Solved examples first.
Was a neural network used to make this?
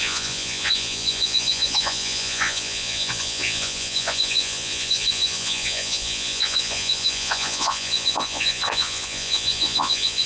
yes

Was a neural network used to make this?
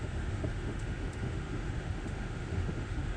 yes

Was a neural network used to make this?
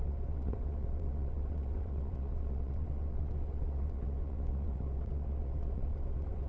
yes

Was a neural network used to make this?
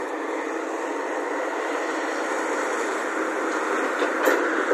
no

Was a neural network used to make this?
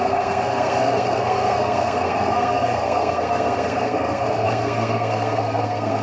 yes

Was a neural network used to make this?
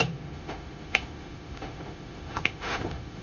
yes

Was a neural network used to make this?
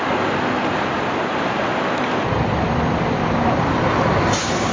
no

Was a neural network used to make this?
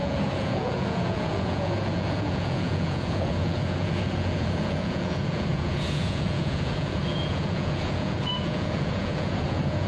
yes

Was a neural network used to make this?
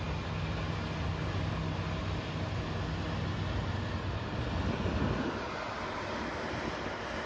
no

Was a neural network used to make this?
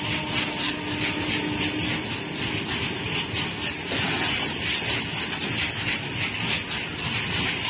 no